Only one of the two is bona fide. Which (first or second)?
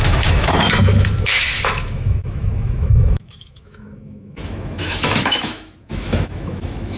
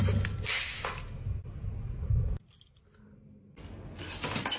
second